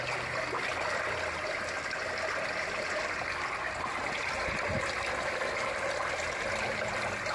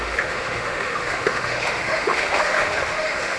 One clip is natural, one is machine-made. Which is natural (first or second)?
first